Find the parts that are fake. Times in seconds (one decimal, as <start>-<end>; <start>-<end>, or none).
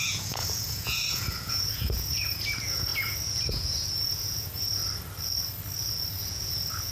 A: 0.0-4.8; 6.2-6.9